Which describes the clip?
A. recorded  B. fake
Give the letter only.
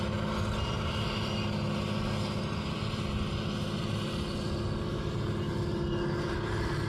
A